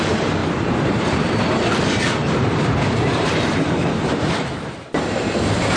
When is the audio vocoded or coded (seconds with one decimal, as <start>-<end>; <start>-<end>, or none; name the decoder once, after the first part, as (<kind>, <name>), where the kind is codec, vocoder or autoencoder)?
0.4-1.4 (vocoder, BigVGAN v2); 2.2-4.8